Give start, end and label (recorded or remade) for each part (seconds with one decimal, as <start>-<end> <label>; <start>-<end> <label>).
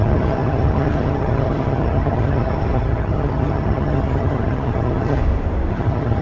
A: 0.0-5.2 remade; 5.2-5.7 recorded; 5.7-6.2 remade